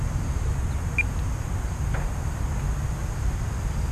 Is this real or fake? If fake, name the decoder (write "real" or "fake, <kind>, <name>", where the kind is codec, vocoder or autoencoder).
real